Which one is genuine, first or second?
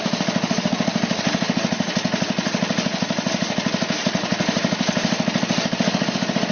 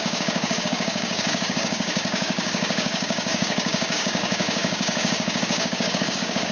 first